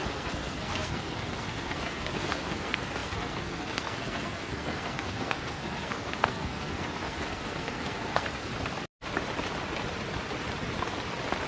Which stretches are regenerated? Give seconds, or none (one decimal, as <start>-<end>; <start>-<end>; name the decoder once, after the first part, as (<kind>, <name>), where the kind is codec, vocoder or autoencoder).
0.0-8.5 (codec, SNAC)